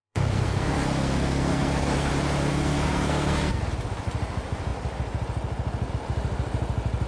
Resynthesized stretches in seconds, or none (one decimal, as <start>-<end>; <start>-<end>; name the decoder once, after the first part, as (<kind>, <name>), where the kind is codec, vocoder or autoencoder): 0.0-2.1 (codec, SNAC); 2.5-3.6